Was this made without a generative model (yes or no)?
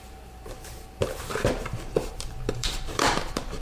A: no